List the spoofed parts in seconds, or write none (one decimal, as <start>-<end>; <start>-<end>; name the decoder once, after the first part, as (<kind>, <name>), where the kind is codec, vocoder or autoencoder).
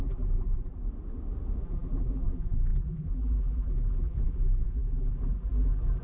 0.0-0.8 (vocoder, BigVGAN v2); 1.6-6.0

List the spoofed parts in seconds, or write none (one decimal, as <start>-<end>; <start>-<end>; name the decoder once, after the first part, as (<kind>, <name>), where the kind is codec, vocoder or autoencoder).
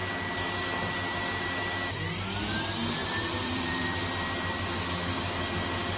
3.0-4.1 (vocoder, BigVGAN v2)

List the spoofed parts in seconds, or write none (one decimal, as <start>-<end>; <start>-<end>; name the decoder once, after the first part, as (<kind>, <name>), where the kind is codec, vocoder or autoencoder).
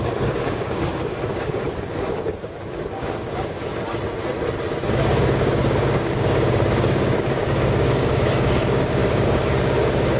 0.0-3.7 (codec, DAC); 4.9-10.2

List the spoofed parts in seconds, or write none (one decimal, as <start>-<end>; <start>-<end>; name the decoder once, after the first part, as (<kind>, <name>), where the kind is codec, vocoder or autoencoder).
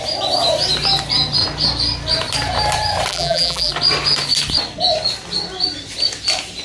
3.1-3.7 (vocoder, BigVGAN v2)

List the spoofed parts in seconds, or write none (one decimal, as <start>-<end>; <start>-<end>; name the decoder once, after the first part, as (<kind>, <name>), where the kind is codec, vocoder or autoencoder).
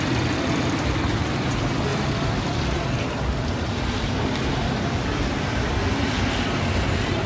none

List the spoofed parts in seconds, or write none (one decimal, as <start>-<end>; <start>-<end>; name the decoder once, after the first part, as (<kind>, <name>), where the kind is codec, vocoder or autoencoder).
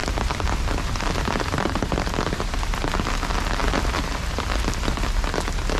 0.0-2.9 (vocoder, BigVGAN v2); 3.6-4.9